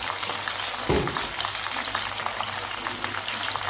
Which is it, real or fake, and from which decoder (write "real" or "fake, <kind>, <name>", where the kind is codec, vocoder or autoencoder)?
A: real